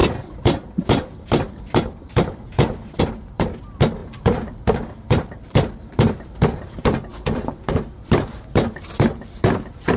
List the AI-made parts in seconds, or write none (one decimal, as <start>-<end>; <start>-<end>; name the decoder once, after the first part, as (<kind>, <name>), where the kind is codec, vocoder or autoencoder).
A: 0.0-3.0 (vocoder, BigVGAN v2); 4.0-7.0